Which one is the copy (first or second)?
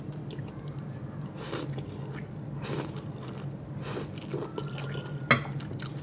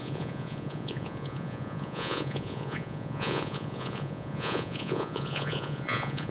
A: second